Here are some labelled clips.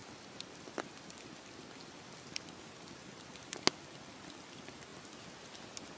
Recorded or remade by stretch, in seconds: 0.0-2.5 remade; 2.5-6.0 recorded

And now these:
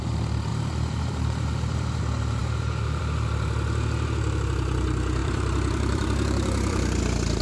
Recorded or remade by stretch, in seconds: 0.0-0.5 recorded; 0.5-2.0 remade; 2.0-5.2 recorded; 5.2-7.0 remade; 7.0-7.4 recorded

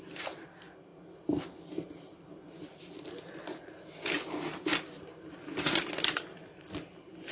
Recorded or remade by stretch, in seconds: 0.0-0.9 recorded; 0.9-2.3 remade; 2.3-4.7 recorded; 4.7-7.3 remade

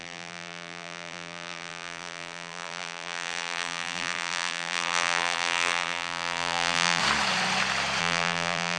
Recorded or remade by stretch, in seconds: 0.0-7.0 remade; 7.0-8.0 recorded; 8.0-8.8 remade

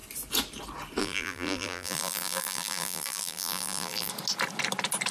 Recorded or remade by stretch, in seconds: 0.0-1.0 recorded; 1.0-4.1 remade; 4.1-5.1 recorded

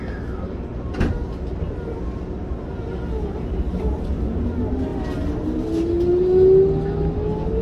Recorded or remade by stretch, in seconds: 0.0-7.6 recorded